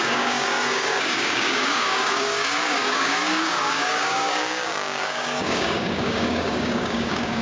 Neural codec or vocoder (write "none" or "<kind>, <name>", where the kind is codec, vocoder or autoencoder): codec, DAC